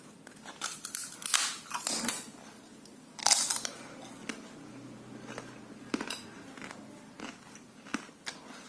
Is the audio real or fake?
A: real